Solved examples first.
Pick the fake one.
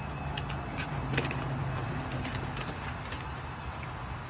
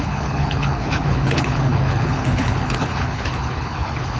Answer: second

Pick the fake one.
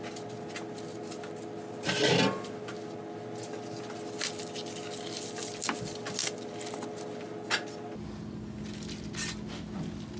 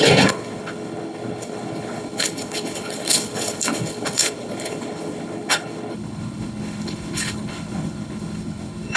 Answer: second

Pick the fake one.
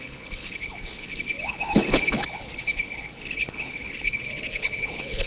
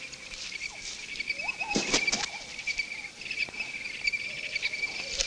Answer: first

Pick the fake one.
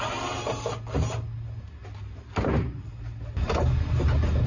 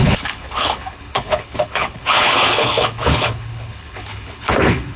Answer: second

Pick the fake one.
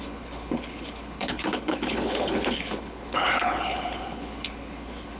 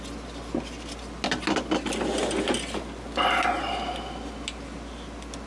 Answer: first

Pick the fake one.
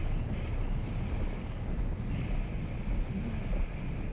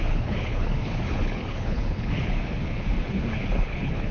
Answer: second